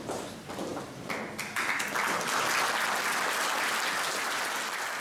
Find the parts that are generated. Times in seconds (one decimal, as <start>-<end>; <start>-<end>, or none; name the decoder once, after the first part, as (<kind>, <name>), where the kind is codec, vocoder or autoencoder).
none